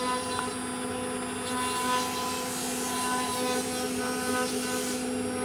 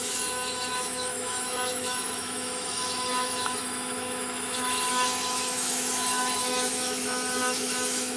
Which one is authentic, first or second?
first